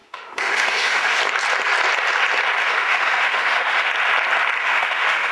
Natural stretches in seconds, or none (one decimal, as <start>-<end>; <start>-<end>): 1.2-2.6; 3.9-4.6